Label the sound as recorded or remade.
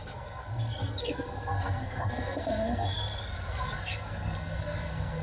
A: remade